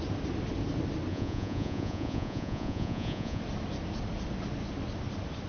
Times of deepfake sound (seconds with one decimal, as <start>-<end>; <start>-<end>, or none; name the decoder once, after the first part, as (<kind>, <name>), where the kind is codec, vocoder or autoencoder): 1.1-3.4 (vocoder, Vocos)